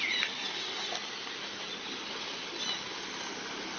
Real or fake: real